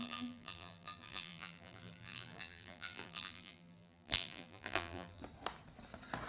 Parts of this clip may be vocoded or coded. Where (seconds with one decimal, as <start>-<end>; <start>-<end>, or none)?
0.0-5.2